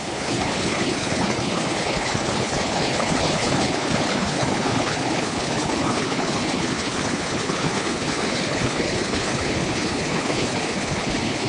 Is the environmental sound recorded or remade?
remade